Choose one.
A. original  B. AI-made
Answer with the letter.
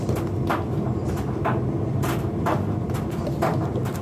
A